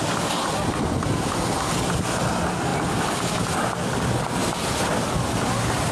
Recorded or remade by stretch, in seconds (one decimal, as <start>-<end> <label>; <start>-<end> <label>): 0.0-4.4 recorded; 4.4-5.2 remade; 5.2-5.9 recorded